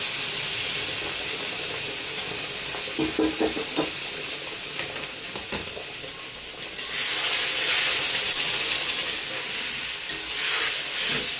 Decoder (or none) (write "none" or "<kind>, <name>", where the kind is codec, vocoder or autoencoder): none